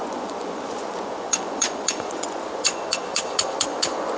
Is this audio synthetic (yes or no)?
yes